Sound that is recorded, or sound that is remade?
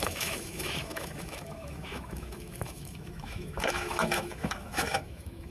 remade